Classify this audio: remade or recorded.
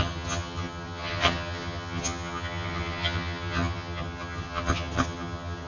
remade